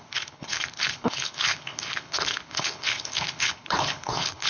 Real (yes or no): no